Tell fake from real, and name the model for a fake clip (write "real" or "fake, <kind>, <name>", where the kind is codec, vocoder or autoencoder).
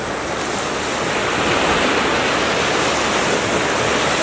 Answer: real